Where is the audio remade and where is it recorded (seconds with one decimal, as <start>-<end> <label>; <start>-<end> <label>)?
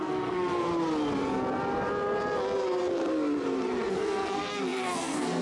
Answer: 0.0-0.7 remade; 0.7-3.9 recorded; 3.9-5.4 remade